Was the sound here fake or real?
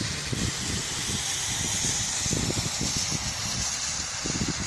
real